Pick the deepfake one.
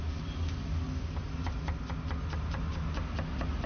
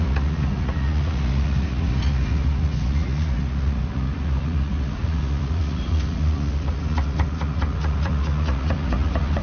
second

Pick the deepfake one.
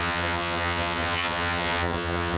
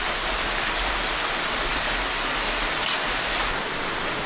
first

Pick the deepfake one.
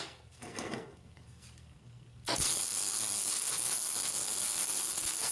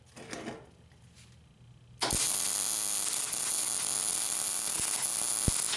first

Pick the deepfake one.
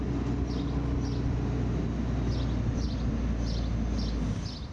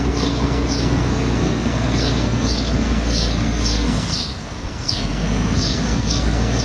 second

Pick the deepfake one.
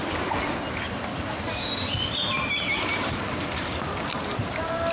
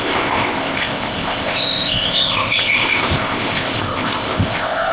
second